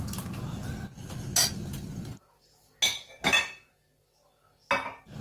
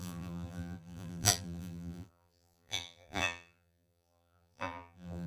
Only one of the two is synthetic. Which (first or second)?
second